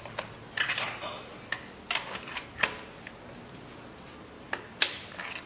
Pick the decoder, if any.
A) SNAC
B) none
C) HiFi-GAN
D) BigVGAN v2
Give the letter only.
B